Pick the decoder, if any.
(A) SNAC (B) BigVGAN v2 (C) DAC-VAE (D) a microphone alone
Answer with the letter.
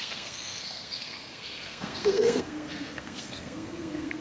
A